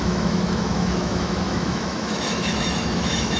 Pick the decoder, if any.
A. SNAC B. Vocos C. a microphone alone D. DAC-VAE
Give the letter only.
D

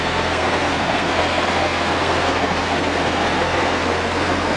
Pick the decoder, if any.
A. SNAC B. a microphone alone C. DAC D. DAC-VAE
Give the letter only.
A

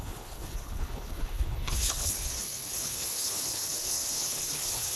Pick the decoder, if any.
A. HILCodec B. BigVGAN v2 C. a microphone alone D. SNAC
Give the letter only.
A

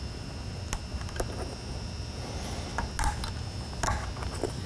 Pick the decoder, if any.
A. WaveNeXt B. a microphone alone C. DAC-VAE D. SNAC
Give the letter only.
B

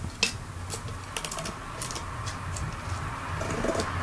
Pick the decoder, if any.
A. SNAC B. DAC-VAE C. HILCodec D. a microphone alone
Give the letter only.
D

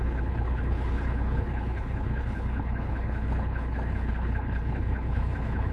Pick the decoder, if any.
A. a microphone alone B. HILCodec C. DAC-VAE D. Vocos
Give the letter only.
B